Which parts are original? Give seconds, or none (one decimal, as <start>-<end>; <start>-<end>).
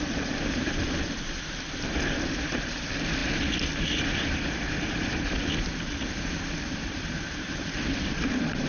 3.2-4.0